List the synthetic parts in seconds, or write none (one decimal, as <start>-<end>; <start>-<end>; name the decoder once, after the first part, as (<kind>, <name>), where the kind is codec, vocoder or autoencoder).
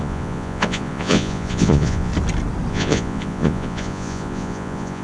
0.0-2.1 (vocoder, Vocos); 2.7-5.0